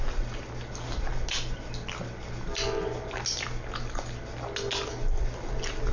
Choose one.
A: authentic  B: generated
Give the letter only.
A